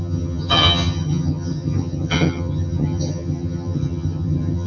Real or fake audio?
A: fake